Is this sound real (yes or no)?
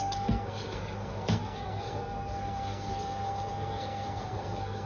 no